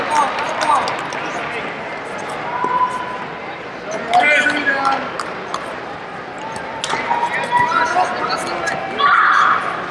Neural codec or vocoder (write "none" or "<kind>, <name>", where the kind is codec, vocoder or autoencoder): none